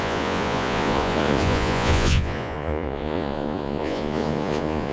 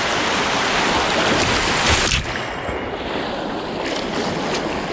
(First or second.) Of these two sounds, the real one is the second